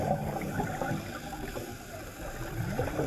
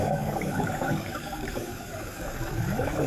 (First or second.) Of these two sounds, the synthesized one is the second